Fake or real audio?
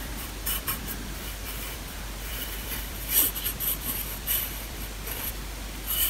fake